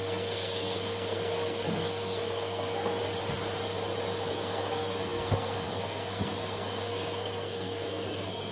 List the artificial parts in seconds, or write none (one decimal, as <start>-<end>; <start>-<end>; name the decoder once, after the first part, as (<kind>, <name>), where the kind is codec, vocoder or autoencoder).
0.0-3.0 (codec, SNAC); 4.3-8.5

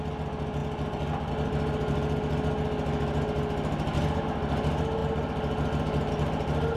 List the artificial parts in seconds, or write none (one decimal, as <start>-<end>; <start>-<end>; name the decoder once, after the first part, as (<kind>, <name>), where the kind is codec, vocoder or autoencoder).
none

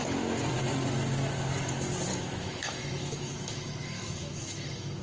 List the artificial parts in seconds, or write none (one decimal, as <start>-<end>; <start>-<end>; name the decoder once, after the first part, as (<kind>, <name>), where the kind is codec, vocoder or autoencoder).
2.1-5.0 (autoencoder, DAC-VAE)